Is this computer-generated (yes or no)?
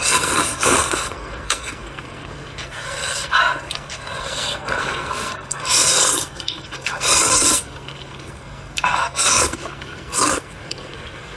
yes